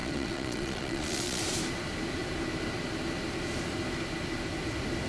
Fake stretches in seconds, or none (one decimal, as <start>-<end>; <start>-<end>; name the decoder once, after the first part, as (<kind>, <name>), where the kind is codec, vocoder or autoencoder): 0.0-1.4 (vocoder, Vocos)